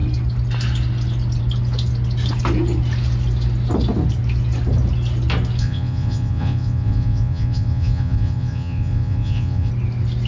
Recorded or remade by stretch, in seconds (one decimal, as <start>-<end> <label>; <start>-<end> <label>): 0.0-5.6 recorded; 5.6-9.7 remade; 9.7-10.3 recorded